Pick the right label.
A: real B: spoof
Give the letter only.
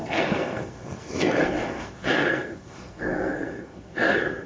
B